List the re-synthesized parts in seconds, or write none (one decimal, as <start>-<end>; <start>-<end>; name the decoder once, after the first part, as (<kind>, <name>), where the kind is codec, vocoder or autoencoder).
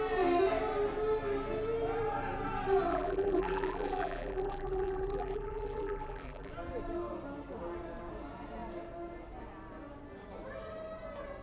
2.9-6.5 (vocoder, BigVGAN v2)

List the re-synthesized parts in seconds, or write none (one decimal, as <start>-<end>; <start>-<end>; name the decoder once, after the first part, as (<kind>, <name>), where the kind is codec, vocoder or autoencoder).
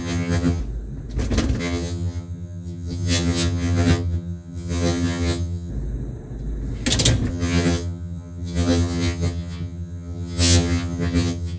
0.0-0.6 (vocoder, HiFi-GAN); 1.6-5.7; 7.3-11.6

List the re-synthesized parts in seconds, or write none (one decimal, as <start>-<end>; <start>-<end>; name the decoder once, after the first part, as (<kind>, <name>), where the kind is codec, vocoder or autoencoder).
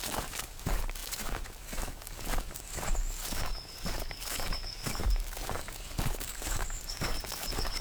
0.0-7.8 (codec, DAC)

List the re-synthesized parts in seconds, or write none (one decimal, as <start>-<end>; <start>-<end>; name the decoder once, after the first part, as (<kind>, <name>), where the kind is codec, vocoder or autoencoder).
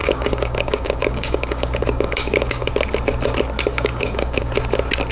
0.0-2.7 (codec, DAC); 3.7-4.5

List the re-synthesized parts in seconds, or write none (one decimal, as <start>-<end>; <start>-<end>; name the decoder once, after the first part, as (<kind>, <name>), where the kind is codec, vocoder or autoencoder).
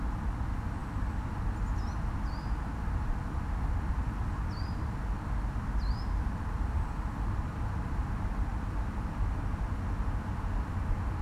none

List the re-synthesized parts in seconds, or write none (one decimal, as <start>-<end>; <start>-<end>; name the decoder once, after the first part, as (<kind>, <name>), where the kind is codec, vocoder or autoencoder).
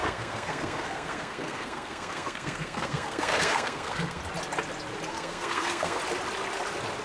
0.0-4.2 (codec, SNAC); 5.1-6.0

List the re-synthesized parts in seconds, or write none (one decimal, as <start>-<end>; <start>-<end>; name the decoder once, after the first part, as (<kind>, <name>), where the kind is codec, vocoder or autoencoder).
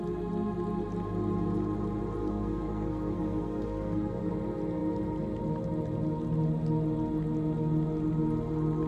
2.2-4.3 (codec, SNAC)